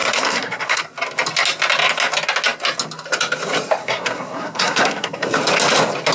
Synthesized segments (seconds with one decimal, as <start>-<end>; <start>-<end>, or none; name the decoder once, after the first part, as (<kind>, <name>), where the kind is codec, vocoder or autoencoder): 0.0-0.8 (codec, SNAC); 3.8-5.4